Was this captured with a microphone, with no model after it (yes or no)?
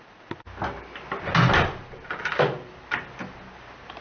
yes